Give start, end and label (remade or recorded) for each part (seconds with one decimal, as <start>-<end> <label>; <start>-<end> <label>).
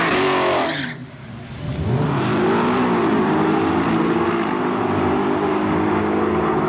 0.0-6.7 recorded